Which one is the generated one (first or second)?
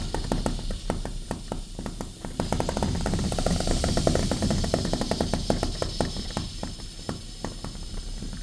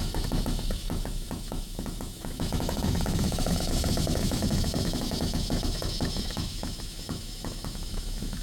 second